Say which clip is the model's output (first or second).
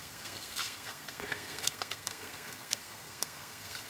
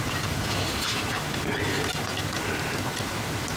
first